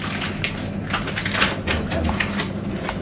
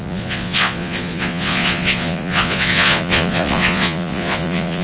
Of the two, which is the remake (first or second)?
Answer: second